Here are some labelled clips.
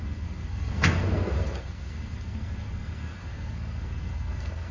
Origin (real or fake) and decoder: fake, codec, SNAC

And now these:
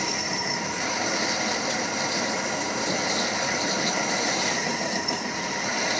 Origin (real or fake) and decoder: fake, vocoder, BigVGAN v2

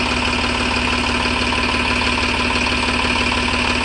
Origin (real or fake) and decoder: real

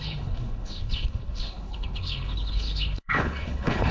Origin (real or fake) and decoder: fake, codec, HILCodec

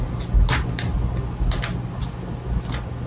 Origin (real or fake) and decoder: real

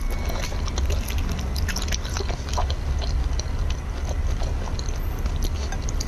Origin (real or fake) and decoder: real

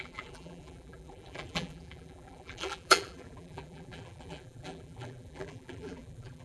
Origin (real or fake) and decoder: fake, vocoder, BigVGAN v2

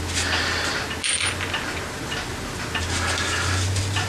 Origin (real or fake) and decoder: real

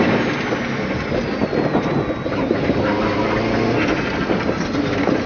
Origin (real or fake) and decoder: real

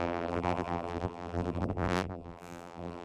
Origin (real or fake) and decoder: fake, vocoder, BigVGAN v2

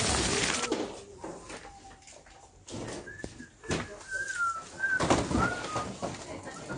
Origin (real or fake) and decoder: real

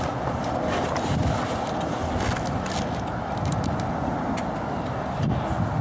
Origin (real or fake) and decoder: real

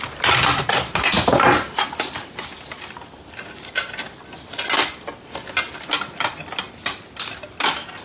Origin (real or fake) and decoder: real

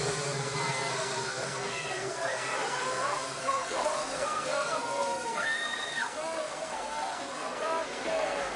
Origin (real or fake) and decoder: fake, codec, SNAC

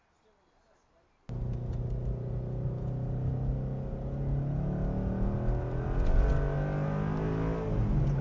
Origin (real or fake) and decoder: real